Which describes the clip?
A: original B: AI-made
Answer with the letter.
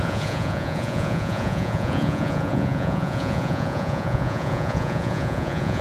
B